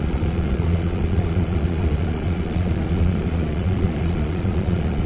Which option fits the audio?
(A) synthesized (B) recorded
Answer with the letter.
A